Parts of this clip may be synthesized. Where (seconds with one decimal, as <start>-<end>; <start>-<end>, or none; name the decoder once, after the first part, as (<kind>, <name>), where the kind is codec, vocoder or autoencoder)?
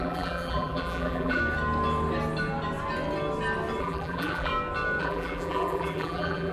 0.0-1.4 (vocoder, BigVGAN v2); 3.8-4.5; 5.0-6.5